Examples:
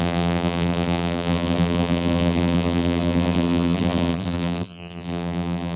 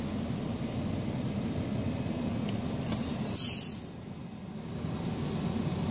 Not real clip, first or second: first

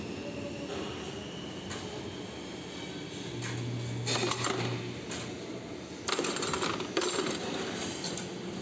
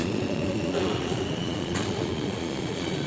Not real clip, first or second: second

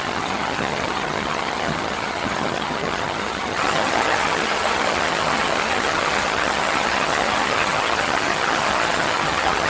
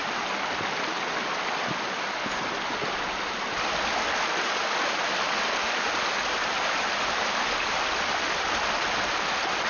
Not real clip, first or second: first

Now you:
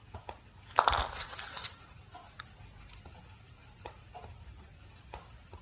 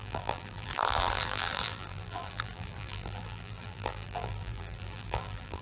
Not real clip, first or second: second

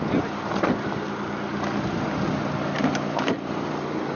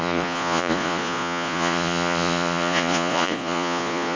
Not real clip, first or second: second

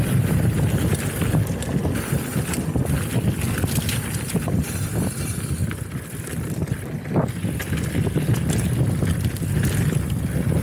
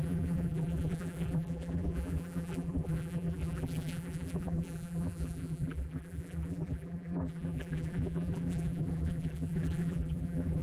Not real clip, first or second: second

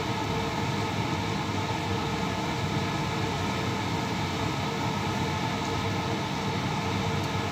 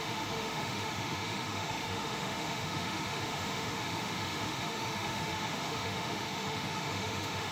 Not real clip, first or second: second